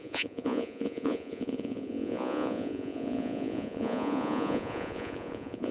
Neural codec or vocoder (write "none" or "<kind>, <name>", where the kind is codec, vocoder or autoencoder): vocoder, Vocos